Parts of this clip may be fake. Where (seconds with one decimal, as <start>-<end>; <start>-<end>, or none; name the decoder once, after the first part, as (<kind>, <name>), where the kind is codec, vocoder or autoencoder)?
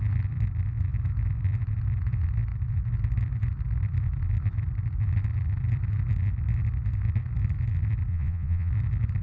8.1-8.7 (vocoder, Vocos)